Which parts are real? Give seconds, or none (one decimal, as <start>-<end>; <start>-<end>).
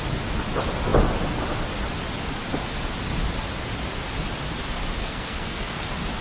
0.0-5.0; 5.8-6.2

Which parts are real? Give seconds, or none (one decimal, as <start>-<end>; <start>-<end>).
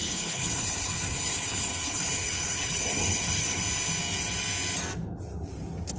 3.6-6.0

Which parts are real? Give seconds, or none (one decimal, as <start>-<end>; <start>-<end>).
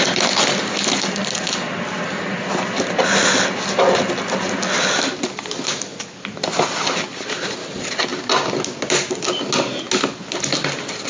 0.0-11.1